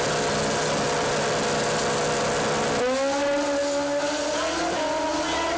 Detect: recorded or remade recorded